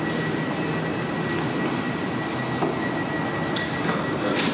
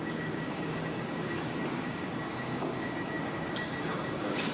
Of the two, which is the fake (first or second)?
second